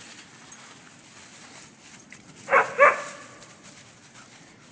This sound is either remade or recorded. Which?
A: recorded